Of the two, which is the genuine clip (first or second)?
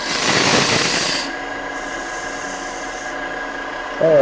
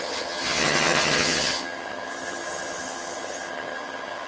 first